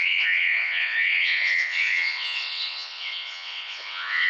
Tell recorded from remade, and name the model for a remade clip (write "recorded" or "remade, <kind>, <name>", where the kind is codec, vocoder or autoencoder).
remade, vocoder, WaveNeXt